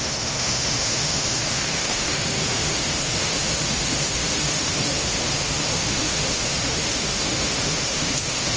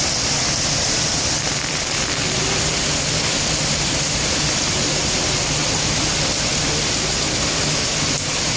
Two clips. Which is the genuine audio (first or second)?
second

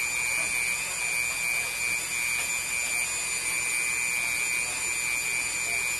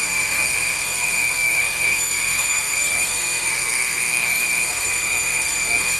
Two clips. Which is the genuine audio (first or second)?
first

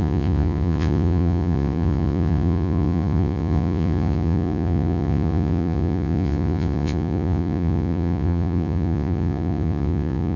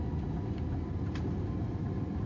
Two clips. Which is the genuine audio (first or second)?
second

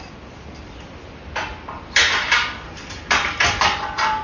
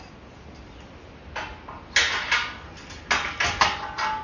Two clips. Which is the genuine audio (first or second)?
second